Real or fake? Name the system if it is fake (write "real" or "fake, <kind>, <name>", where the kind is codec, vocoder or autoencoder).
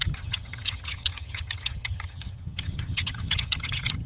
fake, vocoder, HiFi-GAN